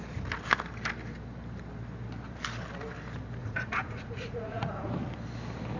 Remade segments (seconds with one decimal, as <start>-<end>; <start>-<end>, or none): 3.4-4.9